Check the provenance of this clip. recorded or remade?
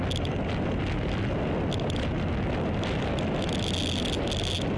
recorded